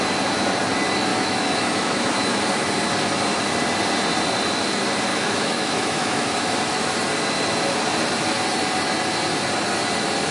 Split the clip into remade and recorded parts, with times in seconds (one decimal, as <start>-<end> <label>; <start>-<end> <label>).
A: 0.0-1.1 recorded; 1.1-2.4 remade; 2.4-5.1 recorded; 5.1-6.4 remade; 6.4-10.3 recorded